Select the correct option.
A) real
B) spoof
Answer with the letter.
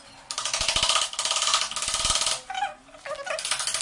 A